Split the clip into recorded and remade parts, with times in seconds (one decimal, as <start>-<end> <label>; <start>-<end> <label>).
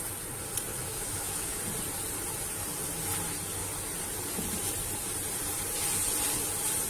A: 0.0-0.7 recorded; 0.7-1.6 remade; 1.6-6.9 recorded